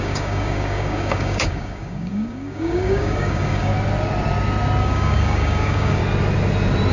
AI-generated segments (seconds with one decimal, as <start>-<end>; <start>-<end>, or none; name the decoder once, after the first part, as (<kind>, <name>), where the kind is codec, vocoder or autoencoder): 0.0-3.7 (codec, DAC); 4.8-6.0